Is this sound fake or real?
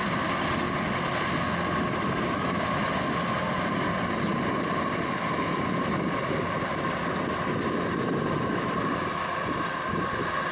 real